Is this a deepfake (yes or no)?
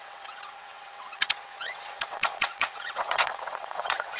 yes